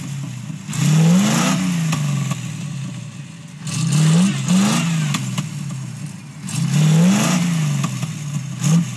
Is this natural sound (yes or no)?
yes